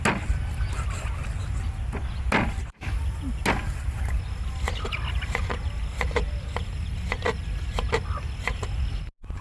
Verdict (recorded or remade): recorded